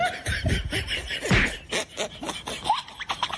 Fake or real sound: real